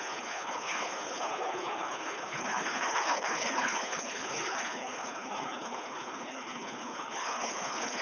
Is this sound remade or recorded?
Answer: remade